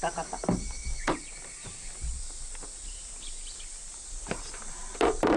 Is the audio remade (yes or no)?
no